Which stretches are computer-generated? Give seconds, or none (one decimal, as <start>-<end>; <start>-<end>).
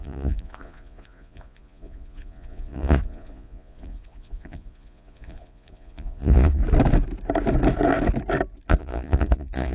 0.0-6.6; 8.7-9.7